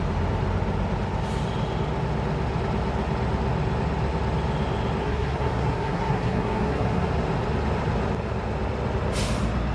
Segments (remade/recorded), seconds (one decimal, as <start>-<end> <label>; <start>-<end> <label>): 0.0-5.0 recorded; 5.0-7.1 remade; 7.1-9.7 recorded